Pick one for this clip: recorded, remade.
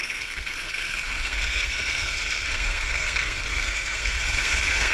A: remade